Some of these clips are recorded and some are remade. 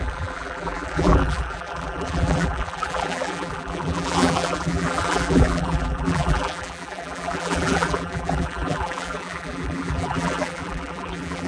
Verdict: remade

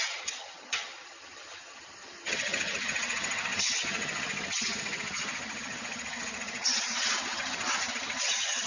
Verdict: remade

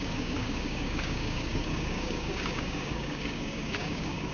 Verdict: remade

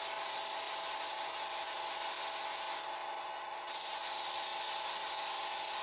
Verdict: recorded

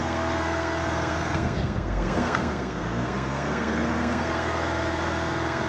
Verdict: remade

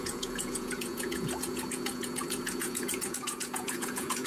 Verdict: remade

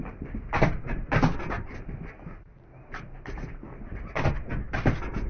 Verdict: recorded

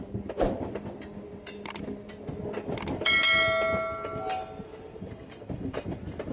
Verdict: recorded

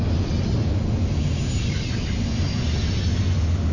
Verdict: recorded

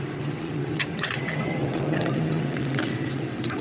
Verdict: remade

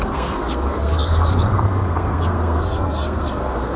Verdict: remade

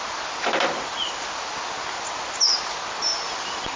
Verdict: recorded